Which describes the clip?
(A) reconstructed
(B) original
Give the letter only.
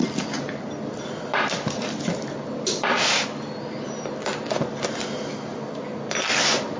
B